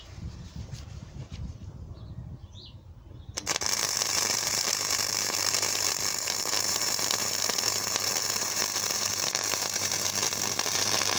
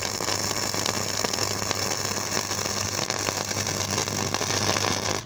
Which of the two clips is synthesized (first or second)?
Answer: first